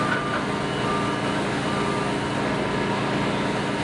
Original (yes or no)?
yes